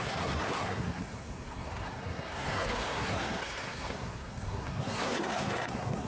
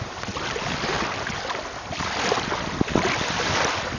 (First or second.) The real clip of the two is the second